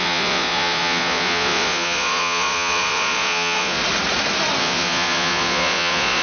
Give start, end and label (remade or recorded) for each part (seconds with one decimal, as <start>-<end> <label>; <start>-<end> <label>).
0.0-3.8 remade; 3.8-4.6 recorded; 4.6-6.2 remade